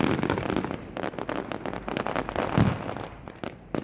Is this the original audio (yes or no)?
yes